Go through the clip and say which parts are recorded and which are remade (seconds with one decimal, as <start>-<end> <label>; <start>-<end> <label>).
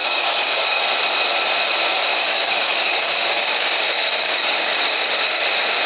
0.0-0.8 remade; 0.8-2.1 recorded; 2.1-5.4 remade; 5.4-5.9 recorded